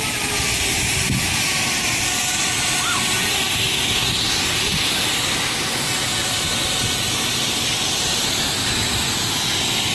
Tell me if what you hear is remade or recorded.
recorded